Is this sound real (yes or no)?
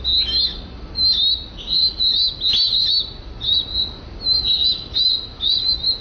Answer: yes